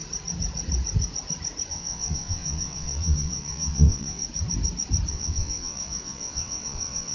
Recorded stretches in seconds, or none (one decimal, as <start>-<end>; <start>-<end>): 0.0-1.7; 4.2-5.1